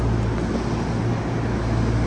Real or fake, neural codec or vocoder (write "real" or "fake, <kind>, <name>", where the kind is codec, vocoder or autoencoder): real